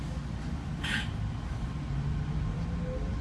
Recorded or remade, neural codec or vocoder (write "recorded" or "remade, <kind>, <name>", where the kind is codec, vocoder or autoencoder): recorded